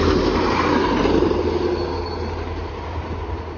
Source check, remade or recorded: recorded